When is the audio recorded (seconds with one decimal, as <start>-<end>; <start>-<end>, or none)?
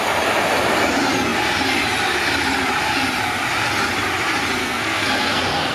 0.0-4.6